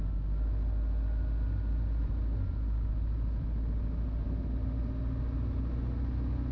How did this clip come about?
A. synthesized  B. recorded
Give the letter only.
B